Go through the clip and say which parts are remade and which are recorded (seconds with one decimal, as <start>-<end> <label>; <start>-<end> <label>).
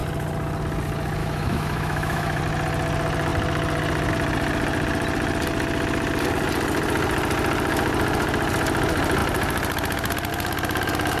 0.0-1.2 recorded; 1.2-2.4 remade; 2.4-11.2 recorded